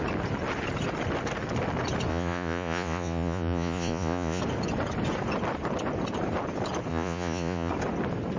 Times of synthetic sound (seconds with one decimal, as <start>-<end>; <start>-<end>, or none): 2.1-4.4; 6.9-7.7